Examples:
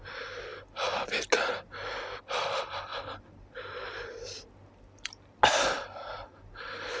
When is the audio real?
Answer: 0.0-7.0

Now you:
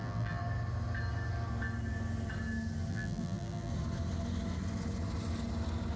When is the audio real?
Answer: 0.4-2.9; 3.7-6.0